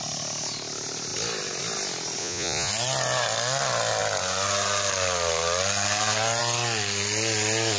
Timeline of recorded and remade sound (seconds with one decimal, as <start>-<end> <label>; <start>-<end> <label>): 0.0-2.2 recorded; 2.2-2.7 remade; 2.7-7.8 recorded